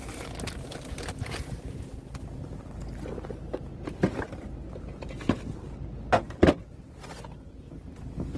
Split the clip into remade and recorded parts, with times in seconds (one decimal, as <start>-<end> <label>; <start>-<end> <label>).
0.0-8.4 recorded